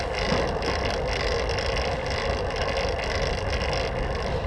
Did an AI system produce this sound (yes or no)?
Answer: no